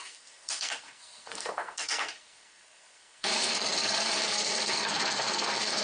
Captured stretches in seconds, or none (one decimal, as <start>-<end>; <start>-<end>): none